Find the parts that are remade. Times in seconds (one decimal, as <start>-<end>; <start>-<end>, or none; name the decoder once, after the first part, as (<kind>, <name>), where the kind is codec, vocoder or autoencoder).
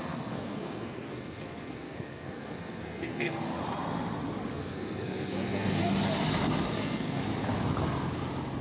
0.0-3.4 (codec, SNAC); 4.5-5.8; 6.7-7.2